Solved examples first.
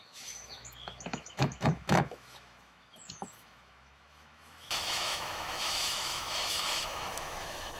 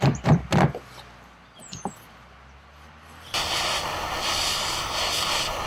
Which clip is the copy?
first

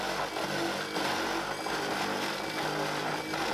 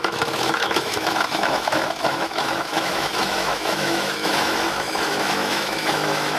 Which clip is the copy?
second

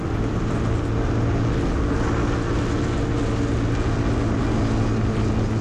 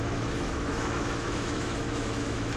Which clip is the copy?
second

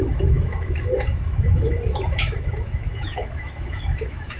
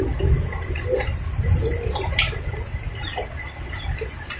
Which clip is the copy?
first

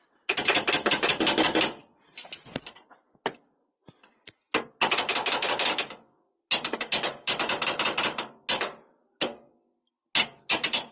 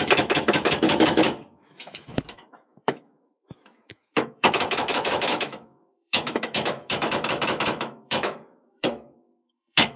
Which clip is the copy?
second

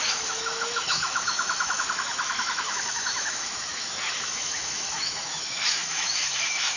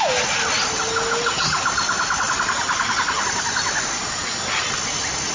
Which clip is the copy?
first